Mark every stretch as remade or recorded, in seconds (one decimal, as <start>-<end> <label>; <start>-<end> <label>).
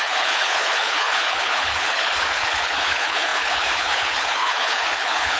0.0-5.4 remade